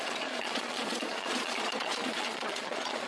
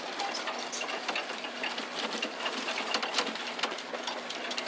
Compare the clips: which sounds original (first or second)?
second